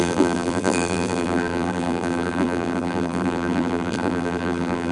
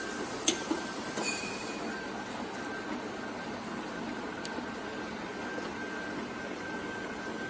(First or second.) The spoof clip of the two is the first